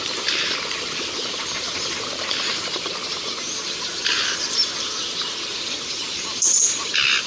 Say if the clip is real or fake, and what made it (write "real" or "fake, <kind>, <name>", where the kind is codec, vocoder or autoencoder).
fake, vocoder, BigVGAN v2